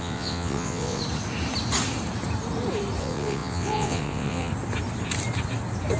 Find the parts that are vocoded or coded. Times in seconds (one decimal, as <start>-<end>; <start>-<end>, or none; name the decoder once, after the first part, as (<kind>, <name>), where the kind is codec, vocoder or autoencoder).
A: 0.0-1.0 (vocoder, WaveNeXt); 3.0-4.5